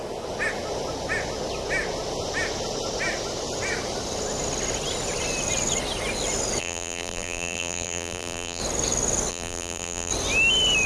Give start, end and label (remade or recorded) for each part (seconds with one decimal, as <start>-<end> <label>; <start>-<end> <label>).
0.0-6.6 recorded; 6.6-8.6 remade; 8.6-9.3 recorded; 9.3-10.1 remade; 10.1-10.9 recorded